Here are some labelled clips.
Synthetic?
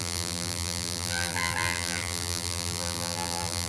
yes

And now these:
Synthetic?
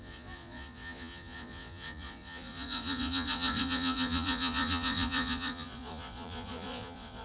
yes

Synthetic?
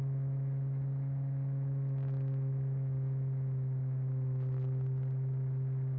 no